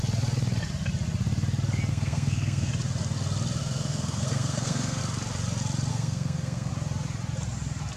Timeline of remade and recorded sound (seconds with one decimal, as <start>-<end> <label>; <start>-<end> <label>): 0.0-1.9 recorded; 1.9-2.7 remade; 2.7-3.6 recorded; 3.6-5.0 remade; 5.0-5.9 recorded; 5.9-6.7 remade; 6.7-8.0 recorded